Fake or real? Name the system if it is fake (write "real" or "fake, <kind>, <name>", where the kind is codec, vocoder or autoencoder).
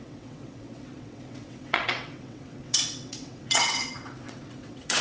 fake, vocoder, WaveNeXt